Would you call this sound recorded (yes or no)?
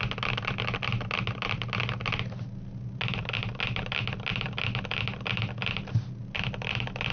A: yes